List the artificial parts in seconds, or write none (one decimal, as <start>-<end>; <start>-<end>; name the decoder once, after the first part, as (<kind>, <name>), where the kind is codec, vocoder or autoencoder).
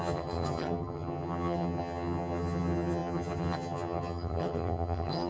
0.0-5.3 (vocoder, HiFi-GAN)